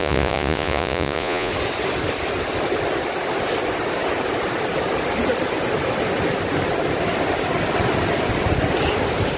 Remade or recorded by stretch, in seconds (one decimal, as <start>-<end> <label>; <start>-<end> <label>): 0.0-1.5 remade; 1.5-9.4 recorded